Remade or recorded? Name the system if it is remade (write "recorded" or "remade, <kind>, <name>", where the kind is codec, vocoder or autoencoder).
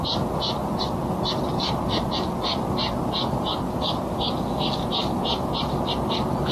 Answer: recorded